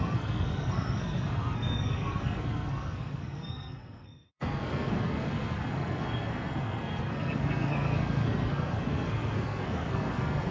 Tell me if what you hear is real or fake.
fake